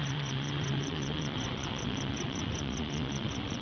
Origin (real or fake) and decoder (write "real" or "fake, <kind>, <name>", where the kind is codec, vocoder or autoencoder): fake, vocoder, WaveNeXt